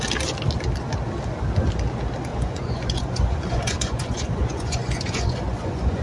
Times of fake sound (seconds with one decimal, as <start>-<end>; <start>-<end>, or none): 2.3-6.0